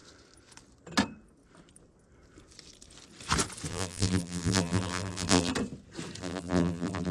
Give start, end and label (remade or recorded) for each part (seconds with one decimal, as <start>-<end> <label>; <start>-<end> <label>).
0.0-3.7 recorded; 3.7-5.5 remade; 5.5-6.2 recorded; 6.2-7.1 remade